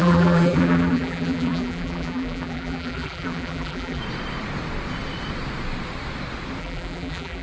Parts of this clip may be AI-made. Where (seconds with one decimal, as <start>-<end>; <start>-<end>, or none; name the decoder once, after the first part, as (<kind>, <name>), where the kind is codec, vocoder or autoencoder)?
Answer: 0.0-4.0 (vocoder, BigVGAN v2); 6.6-7.4